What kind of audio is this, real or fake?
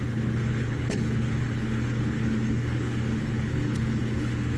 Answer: fake